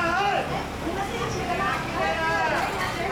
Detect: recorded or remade remade